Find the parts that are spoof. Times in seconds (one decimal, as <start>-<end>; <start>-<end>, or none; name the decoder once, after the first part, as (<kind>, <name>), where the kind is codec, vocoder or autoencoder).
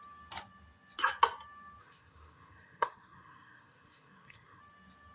1.8-4.6 (codec, SNAC)